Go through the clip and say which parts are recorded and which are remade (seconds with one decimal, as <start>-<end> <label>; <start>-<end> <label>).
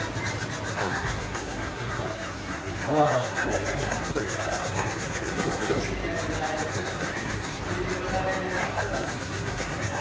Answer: 0.0-0.7 recorded; 0.7-5.8 remade; 5.8-6.7 recorded; 6.7-7.6 remade; 7.6-8.6 recorded; 8.6-10.0 remade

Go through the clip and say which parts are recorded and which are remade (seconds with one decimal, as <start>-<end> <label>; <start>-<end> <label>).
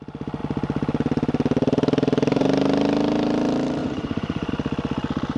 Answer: 0.0-3.8 recorded; 3.8-4.5 remade; 4.5-5.4 recorded